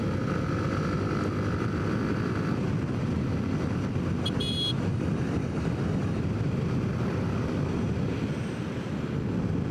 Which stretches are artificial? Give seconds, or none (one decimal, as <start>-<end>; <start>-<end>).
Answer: 4.9-6.2